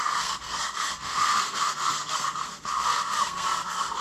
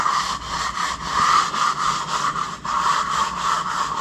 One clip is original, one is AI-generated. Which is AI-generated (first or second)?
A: first